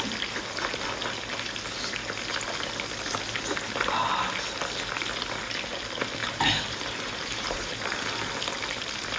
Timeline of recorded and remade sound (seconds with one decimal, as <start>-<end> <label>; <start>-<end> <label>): 0.0-6.2 recorded; 6.2-7.7 remade; 7.7-9.2 recorded